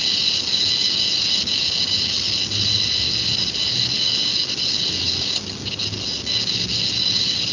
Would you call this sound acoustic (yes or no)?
yes